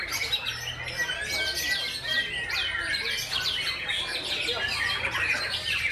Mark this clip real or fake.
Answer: real